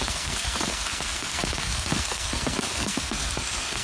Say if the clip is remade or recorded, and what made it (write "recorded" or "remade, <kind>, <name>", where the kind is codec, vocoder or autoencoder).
remade, codec, SNAC